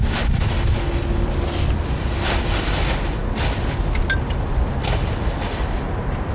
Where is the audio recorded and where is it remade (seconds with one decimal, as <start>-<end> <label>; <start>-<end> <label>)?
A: 0.0-6.3 recorded

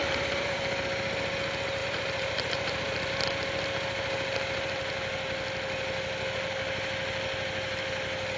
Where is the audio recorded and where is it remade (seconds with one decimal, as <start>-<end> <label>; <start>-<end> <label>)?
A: 0.0-0.6 remade; 0.6-1.8 recorded; 1.8-3.1 remade; 3.1-8.4 recorded

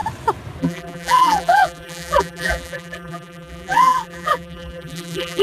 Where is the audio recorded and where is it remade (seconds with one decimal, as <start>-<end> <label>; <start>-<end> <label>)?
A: 0.0-0.6 recorded; 0.6-5.4 remade